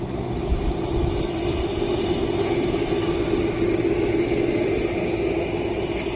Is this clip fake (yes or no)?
no